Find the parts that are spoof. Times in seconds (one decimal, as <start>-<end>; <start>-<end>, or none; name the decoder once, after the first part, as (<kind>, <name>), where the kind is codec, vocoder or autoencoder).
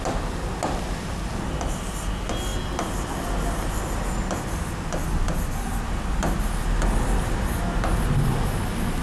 none